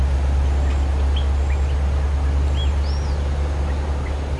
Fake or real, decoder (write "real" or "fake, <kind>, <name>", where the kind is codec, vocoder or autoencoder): real